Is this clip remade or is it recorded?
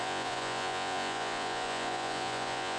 remade